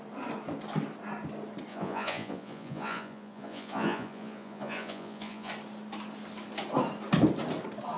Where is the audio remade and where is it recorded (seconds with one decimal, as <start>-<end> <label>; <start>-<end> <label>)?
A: 0.0-1.7 recorded; 1.7-5.5 remade; 5.5-8.0 recorded